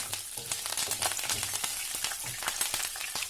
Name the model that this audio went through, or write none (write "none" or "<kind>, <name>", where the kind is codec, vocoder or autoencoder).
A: none